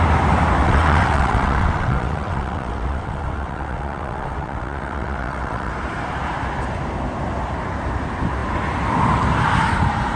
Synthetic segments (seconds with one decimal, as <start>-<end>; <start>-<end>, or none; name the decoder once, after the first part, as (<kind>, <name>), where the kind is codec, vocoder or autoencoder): 0.6-5.7 (vocoder, WaveNeXt)